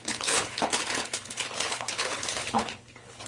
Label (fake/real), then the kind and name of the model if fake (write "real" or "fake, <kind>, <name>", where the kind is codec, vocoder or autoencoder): fake, codec, HILCodec